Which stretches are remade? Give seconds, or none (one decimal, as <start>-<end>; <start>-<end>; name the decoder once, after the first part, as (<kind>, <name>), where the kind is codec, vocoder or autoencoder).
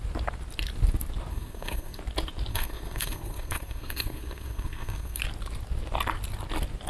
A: 1.3-2.0 (codec, SNAC); 2.5-5.2